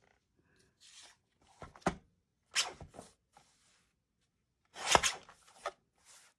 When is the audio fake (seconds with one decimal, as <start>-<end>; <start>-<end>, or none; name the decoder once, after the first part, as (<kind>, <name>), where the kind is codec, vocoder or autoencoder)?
none

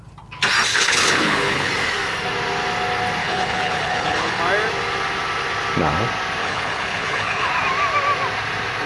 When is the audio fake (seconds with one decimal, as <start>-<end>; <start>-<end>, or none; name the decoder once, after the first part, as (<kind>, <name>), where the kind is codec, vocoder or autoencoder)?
0.7-1.7 (codec, HILCodec); 3.2-4.4; 6.4-7.5

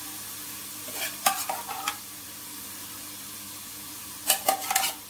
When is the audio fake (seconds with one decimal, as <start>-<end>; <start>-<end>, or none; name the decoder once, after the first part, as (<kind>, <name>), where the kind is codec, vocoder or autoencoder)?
0.0-0.6 (vocoder, BigVGAN v2); 3.7-4.2